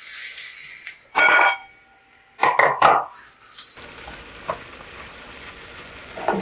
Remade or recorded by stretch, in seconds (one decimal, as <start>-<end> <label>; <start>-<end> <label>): 0.0-1.6 remade; 1.6-5.4 recorded; 5.4-6.4 remade

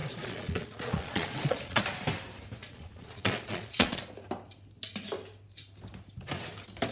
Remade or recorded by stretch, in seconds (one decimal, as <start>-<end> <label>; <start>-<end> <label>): 0.0-1.8 remade; 1.8-2.6 recorded; 2.6-4.0 remade; 4.0-6.9 recorded